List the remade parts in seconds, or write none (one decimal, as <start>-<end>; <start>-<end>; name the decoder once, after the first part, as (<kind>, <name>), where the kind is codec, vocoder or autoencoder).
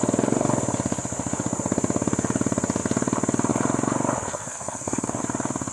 4.3-5.2 (codec, SNAC)